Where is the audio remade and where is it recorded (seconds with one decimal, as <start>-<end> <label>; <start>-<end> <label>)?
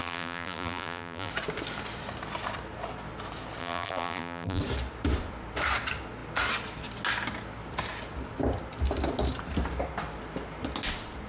0.0-1.3 remade; 1.3-3.6 recorded; 3.6-4.6 remade; 4.6-11.3 recorded